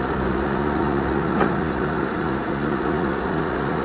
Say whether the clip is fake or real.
fake